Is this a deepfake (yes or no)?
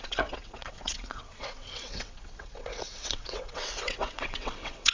yes